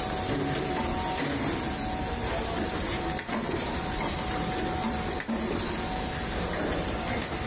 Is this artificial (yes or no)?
no